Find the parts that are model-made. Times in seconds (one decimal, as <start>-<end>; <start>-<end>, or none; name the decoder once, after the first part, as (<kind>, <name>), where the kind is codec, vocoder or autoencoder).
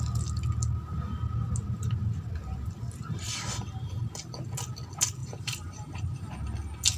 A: 5.2-6.2 (vocoder, BigVGAN v2)